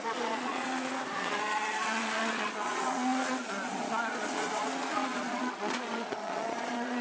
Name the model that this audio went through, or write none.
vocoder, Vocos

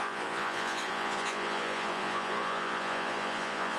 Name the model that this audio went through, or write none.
vocoder, Vocos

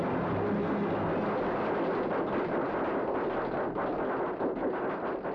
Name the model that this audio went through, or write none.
none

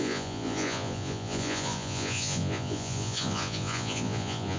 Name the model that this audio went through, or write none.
vocoder, Vocos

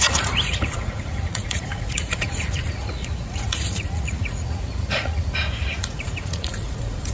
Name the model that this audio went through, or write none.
vocoder, Vocos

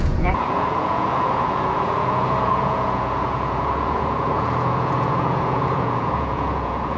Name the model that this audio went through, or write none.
vocoder, Vocos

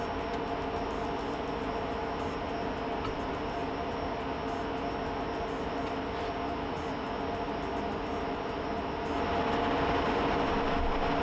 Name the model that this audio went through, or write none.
none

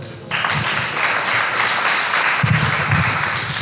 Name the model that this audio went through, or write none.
none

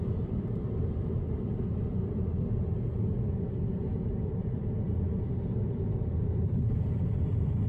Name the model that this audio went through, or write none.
none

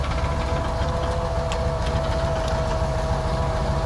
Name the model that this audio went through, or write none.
none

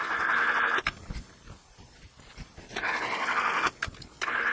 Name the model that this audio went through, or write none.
none